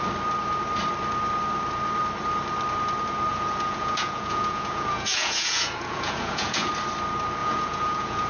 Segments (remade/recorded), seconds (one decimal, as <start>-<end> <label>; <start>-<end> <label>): 0.0-3.3 recorded; 3.3-6.7 remade; 6.7-7.4 recorded; 7.4-8.3 remade